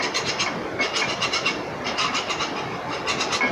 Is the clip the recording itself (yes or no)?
yes